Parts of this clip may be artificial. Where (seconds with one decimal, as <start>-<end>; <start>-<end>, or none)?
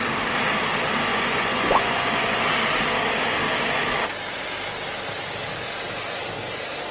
1.1-2.4